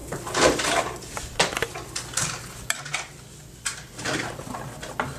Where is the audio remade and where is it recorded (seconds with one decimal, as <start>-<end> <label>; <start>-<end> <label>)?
0.0-5.2 recorded